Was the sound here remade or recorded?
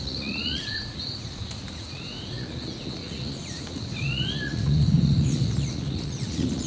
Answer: remade